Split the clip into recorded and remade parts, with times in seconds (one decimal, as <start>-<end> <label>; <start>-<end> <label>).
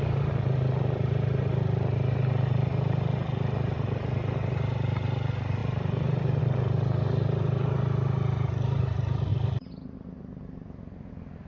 0.0-9.3 recorded; 9.3-11.1 remade; 11.1-11.5 recorded